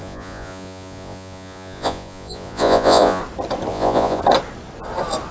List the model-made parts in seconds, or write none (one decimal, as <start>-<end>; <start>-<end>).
0.0-3.2; 3.7-4.2